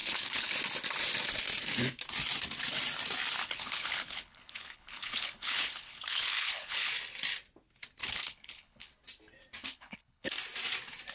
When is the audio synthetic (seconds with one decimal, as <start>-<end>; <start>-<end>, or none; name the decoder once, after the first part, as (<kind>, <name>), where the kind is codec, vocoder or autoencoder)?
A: 0.0-0.5 (codec, HILCodec); 3.4-6.9; 8.0-8.9; 9.6-10.3